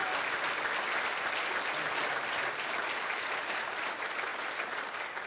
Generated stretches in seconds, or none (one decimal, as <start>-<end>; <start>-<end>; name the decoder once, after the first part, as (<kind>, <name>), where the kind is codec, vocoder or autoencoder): none